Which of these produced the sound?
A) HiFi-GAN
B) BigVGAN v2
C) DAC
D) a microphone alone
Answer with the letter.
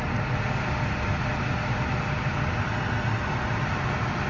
D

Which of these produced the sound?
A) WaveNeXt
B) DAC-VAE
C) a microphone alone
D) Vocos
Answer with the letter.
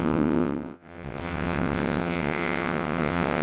A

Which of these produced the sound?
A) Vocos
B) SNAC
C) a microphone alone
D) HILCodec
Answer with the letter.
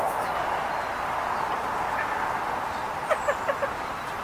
C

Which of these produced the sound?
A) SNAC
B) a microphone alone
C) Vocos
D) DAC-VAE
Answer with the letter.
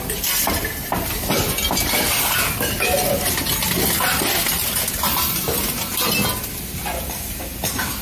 B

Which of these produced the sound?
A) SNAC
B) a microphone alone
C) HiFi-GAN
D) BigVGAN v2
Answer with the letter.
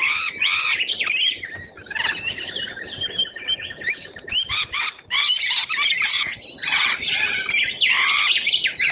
D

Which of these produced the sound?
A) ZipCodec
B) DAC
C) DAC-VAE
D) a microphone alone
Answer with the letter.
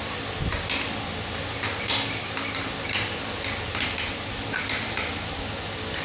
D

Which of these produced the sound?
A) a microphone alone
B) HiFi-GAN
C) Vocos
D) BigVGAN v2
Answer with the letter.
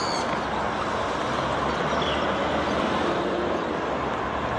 A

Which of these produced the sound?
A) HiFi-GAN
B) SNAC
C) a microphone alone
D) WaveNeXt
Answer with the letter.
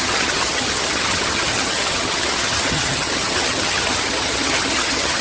A